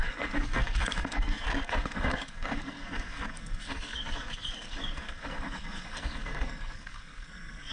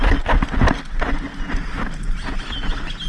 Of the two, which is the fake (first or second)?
first